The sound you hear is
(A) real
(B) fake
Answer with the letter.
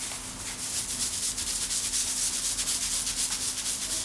A